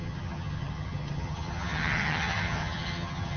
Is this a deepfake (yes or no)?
yes